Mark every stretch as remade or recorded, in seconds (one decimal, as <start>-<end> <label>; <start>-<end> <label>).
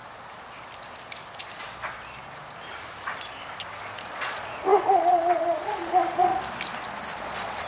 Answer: 0.0-4.1 recorded; 4.1-6.3 remade; 6.3-7.2 recorded; 7.2-7.7 remade